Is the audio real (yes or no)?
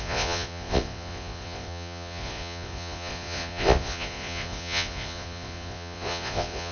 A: no